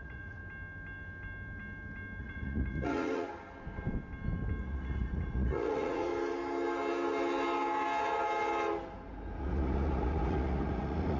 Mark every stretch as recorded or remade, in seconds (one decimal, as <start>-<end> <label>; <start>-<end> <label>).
0.0-0.4 remade; 0.4-2.2 recorded; 2.2-3.3 remade; 3.3-4.6 recorded; 4.6-6.1 remade; 6.1-9.4 recorded; 9.4-11.2 remade